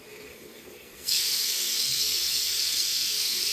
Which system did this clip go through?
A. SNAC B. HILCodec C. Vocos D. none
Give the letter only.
A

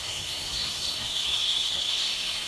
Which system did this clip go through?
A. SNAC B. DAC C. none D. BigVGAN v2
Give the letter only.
A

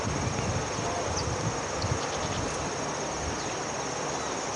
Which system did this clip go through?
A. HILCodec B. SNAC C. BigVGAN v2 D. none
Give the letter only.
D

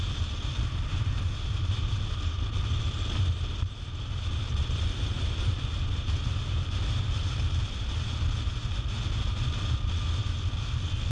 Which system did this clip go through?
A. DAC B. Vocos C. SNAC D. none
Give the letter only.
D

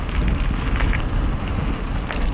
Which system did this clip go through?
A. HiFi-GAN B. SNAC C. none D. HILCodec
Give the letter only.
C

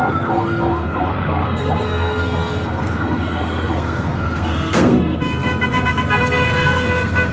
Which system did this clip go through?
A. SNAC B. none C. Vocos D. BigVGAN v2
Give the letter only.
A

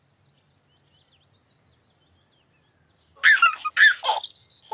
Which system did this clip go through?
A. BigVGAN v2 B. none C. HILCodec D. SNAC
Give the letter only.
B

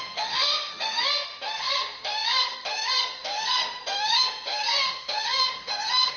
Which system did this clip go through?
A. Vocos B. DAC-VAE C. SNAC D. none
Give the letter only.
C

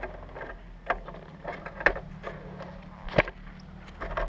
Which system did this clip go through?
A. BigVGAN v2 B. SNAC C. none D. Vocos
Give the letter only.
C